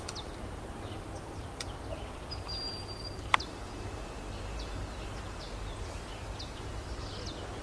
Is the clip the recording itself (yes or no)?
yes